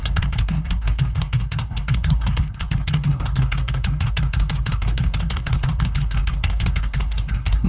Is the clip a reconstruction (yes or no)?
yes